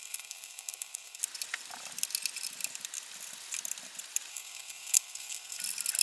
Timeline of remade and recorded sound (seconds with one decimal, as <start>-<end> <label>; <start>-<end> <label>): 0.0-1.2 remade; 1.2-4.3 recorded; 4.3-5.6 remade; 5.6-6.0 recorded